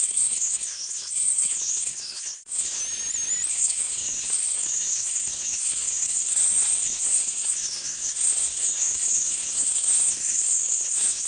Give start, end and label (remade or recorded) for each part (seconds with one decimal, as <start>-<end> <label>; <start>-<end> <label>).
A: 0.0-2.8 remade; 2.8-3.5 recorded; 3.5-11.3 remade